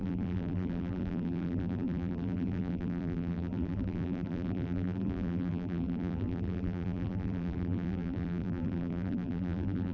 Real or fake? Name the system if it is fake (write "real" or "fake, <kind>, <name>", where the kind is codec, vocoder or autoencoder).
fake, vocoder, BigVGAN v2